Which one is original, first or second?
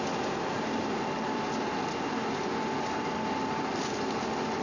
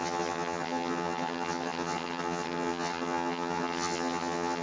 first